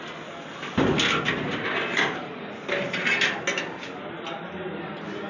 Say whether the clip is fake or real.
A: real